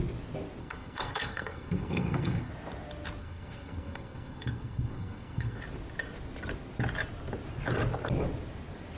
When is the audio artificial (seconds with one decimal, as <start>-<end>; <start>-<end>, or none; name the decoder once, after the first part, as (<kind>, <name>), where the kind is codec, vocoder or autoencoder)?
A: 0.6-2.5 (codec, SNAC); 3.2-5.6

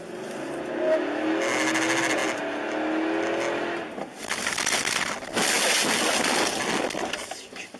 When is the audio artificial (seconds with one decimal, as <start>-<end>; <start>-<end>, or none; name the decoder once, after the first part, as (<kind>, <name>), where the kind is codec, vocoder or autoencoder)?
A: none

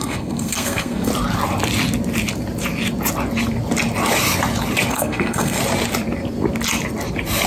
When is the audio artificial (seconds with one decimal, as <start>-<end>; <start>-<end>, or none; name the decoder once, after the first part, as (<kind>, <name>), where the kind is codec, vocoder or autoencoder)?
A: 0.0-1.1 (codec, SNAC); 4.9-5.6